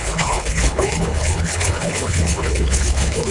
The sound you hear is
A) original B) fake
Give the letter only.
B